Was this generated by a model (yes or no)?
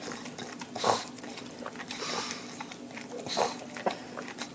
no